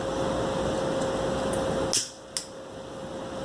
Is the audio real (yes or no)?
yes